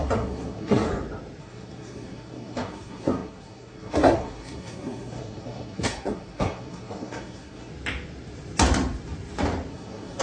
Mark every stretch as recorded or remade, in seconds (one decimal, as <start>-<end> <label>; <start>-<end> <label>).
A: 0.0-0.9 remade; 0.9-1.4 recorded; 1.4-7.7 remade; 7.7-9.7 recorded; 9.7-10.2 remade